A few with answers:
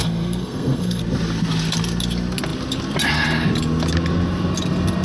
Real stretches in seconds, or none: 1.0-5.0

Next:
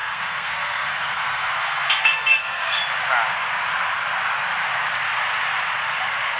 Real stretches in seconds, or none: 2.8-6.4

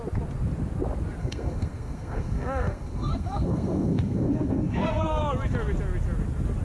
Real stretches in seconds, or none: 0.0-1.2; 5.2-6.6

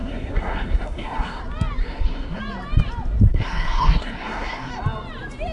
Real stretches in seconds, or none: 1.4-1.8; 2.4-3.3; 4.7-5.5